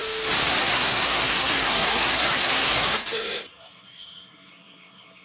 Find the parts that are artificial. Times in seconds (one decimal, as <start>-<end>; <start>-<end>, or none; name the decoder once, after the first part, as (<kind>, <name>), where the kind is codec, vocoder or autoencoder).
0.6-5.2 (codec, SNAC)